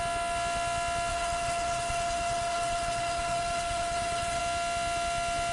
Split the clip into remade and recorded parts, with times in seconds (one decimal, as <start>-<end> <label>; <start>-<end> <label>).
0.0-1.1 recorded; 1.1-4.4 remade; 4.4-5.5 recorded